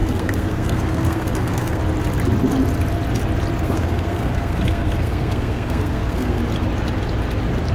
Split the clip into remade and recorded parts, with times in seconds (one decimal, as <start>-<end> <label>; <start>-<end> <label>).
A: 0.0-1.8 remade; 1.8-3.6 recorded; 3.6-6.4 remade; 6.4-7.7 recorded